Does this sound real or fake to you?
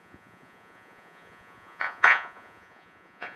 fake